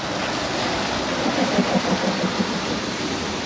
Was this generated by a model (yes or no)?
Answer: no